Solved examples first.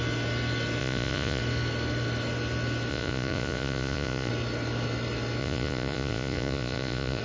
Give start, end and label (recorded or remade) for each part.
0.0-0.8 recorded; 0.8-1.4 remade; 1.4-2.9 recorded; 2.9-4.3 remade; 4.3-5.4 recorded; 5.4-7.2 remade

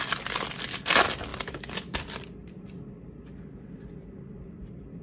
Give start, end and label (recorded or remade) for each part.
0.0-5.0 recorded

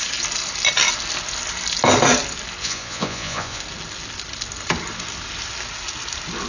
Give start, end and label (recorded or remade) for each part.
0.0-2.6 recorded; 2.6-3.6 remade; 3.6-6.5 recorded